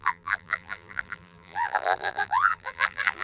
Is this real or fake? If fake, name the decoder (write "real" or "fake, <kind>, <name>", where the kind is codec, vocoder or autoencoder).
fake, vocoder, BigVGAN v2